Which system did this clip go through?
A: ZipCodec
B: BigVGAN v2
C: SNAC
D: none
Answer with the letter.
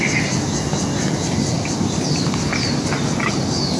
D